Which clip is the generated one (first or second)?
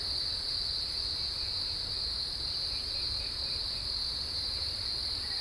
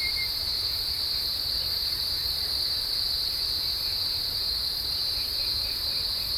second